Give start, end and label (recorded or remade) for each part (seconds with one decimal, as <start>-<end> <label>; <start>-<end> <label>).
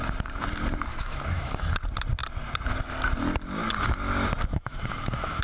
0.0-0.9 recorded; 0.9-1.5 remade; 1.5-4.5 recorded; 4.5-5.4 remade